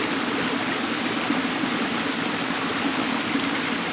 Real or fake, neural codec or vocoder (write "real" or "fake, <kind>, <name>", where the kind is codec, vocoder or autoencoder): real